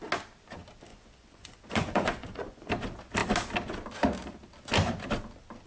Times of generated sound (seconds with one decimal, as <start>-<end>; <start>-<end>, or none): 0.9-2.7